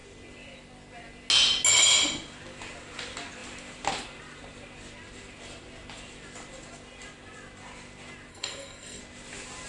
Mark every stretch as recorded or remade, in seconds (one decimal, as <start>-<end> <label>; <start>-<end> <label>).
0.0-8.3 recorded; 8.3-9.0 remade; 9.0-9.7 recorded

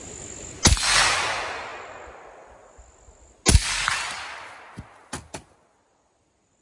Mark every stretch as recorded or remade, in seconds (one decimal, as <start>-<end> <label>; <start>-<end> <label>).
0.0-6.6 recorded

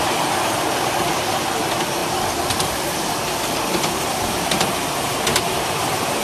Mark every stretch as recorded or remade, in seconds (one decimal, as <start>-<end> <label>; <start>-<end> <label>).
0.0-6.2 recorded

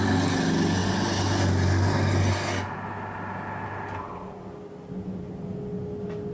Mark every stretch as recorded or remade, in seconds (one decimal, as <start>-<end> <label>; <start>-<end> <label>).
0.0-6.3 recorded

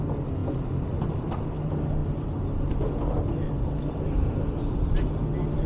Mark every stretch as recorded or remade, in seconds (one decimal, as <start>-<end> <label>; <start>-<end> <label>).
0.0-5.7 recorded

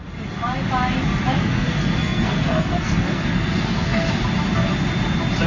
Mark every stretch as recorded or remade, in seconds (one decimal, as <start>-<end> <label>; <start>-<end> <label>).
0.0-1.4 recorded; 1.4-4.1 remade; 4.1-5.5 recorded